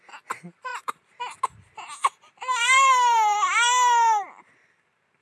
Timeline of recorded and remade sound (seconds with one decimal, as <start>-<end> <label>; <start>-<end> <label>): 0.0-0.7 recorded; 0.7-1.2 remade; 1.2-2.0 recorded; 2.0-5.2 remade